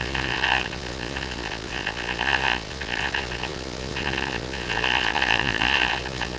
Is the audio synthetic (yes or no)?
yes